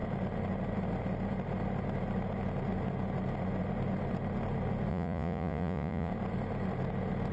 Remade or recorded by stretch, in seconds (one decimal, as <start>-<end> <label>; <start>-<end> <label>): 0.0-4.9 recorded; 4.9-6.1 remade; 6.1-7.3 recorded